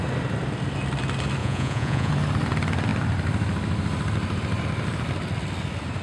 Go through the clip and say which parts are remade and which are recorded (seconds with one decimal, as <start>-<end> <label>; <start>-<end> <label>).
0.0-1.4 recorded; 1.4-2.1 remade; 2.1-6.0 recorded